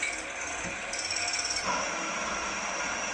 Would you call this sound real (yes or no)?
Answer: yes